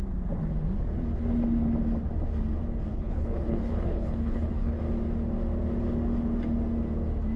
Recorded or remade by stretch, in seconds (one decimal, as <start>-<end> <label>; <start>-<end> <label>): 0.0-2.9 recorded; 2.9-4.8 remade; 4.8-7.4 recorded